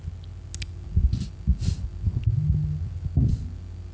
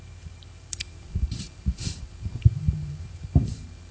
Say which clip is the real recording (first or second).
first